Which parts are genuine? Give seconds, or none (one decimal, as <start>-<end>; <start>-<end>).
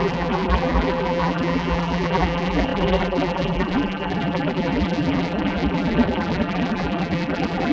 none